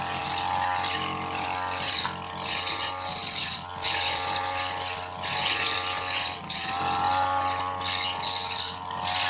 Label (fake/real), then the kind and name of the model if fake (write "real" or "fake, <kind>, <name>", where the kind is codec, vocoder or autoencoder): real